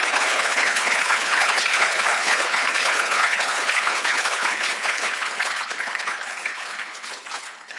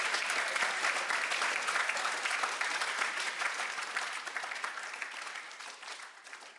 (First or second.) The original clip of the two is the second